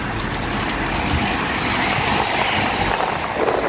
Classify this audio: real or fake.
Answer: real